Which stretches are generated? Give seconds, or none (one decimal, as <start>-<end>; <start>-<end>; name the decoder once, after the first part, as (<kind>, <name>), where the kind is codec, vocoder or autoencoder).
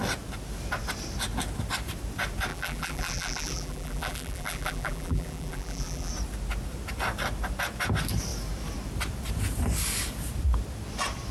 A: 2.5-6.1 (vocoder, BigVGAN v2)